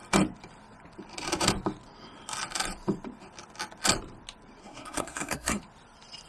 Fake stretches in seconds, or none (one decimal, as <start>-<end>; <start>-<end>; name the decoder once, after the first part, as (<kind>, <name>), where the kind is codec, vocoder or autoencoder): 4.6-5.6 (codec, SNAC)